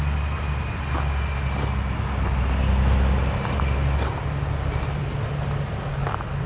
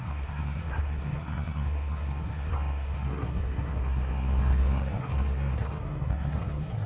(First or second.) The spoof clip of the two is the second